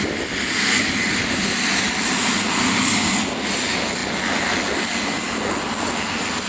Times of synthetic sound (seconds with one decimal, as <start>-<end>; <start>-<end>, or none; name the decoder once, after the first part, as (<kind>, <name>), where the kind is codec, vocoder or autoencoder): none